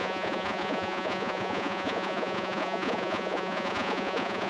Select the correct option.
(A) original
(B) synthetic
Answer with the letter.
B